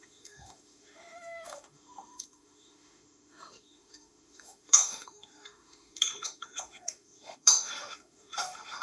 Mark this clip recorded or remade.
remade